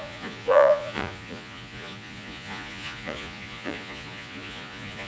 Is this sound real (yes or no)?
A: no